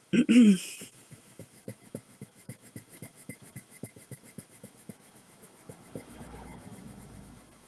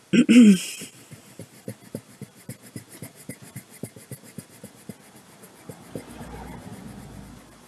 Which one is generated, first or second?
first